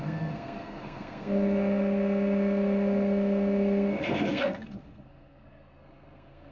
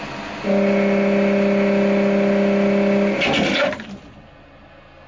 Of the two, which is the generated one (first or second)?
first